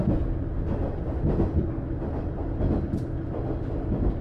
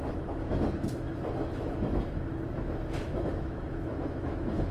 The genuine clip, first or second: first